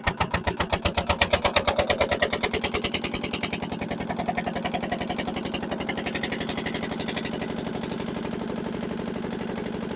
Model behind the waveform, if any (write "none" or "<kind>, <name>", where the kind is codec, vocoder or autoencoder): none